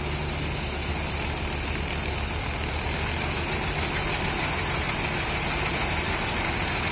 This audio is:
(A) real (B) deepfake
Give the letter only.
A